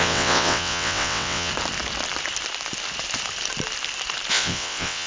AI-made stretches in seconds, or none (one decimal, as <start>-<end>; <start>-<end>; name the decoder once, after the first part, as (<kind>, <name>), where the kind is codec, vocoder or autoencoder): 0.0-1.5 (vocoder, WaveNeXt); 4.3-5.1